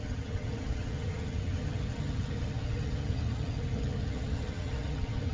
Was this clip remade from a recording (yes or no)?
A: yes